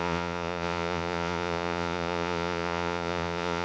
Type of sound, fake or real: fake